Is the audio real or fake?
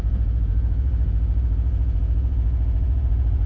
fake